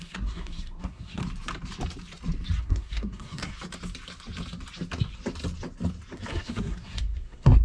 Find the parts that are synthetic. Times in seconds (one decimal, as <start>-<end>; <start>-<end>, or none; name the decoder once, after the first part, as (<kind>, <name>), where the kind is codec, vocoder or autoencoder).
0.0-1.2 (codec, SNAC); 2.6-3.5; 6.3-7.6